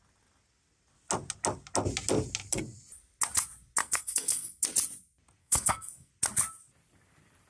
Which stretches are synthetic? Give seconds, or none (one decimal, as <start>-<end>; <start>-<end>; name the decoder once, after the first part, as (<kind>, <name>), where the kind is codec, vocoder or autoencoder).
3.8-4.6 (codec, SNAC); 5.4-6.1